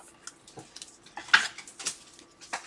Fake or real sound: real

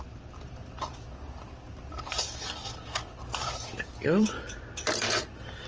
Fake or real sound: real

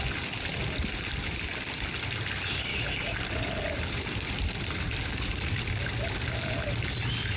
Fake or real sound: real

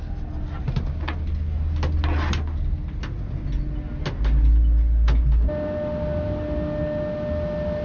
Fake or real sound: real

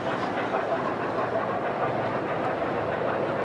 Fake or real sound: real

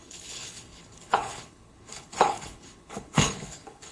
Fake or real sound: fake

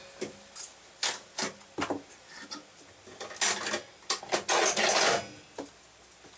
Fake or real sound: real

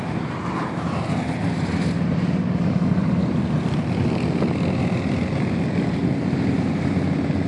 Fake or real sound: real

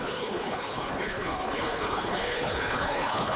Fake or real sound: fake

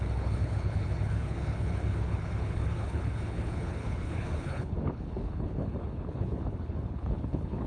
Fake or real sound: fake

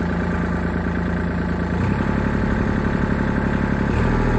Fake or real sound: real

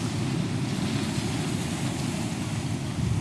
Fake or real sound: real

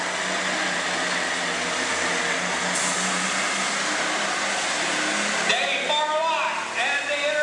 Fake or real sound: real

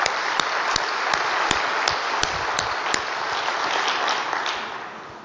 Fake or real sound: real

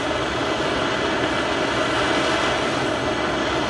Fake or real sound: real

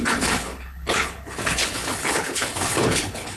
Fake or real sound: fake